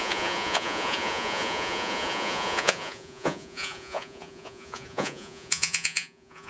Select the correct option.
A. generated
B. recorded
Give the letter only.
A